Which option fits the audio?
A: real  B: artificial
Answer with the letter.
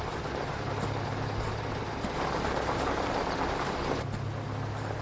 A